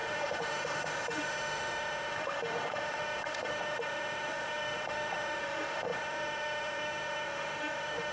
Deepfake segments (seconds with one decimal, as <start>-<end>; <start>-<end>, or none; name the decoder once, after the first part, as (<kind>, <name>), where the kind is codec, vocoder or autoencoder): 0.0-8.1 (autoencoder, DAC-VAE)